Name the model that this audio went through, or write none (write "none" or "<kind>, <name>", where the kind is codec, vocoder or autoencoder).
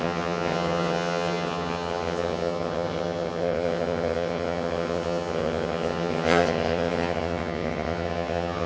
vocoder, HiFi-GAN